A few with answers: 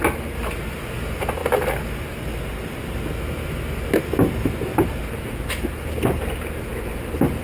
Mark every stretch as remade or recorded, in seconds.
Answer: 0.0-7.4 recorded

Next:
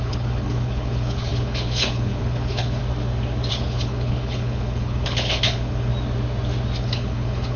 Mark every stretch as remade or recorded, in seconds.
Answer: 0.0-2.8 remade; 2.8-3.5 recorded; 3.5-5.9 remade; 5.9-6.8 recorded; 6.8-7.6 remade

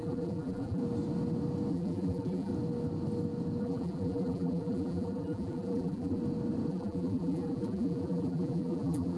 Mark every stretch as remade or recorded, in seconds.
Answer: 0.0-0.8 remade; 0.8-1.7 recorded; 1.7-2.5 remade; 2.5-3.6 recorded; 3.6-6.2 remade; 6.2-6.7 recorded; 6.7-9.2 remade

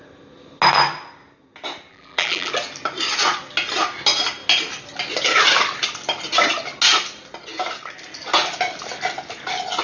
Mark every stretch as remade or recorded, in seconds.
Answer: 0.0-1.9 recorded; 1.9-2.5 remade; 2.5-9.8 recorded

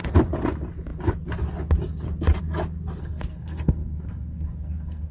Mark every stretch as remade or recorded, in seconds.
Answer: 0.0-3.0 recorded; 3.0-5.1 remade